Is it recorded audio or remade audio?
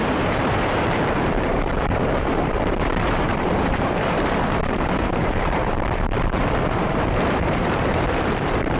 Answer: remade